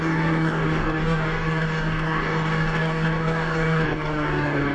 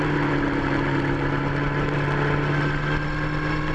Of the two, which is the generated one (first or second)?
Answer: first